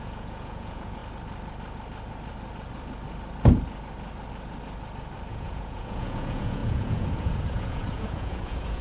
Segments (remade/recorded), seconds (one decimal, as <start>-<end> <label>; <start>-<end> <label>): 0.0-1.0 remade; 1.0-5.3 recorded; 5.3-8.8 remade